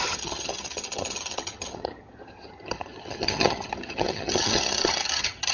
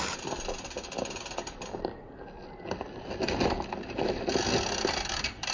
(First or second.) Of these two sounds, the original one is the second